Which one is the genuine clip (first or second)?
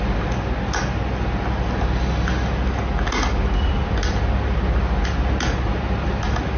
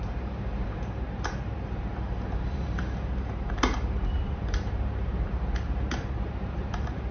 first